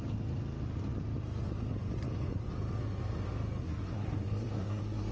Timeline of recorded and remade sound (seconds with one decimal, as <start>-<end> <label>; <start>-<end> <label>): 0.0-3.6 recorded; 3.6-5.1 remade